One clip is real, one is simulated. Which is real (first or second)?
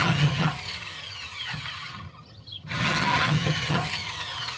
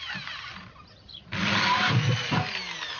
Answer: second